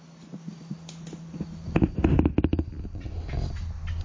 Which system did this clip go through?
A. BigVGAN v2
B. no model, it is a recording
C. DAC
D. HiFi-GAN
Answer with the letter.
B